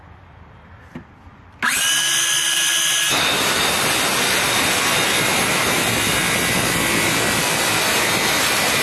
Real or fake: real